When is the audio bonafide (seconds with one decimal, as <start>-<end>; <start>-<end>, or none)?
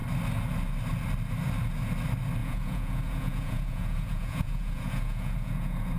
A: 0.0-2.4